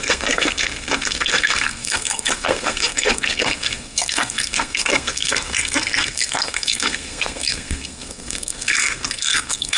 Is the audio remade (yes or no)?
yes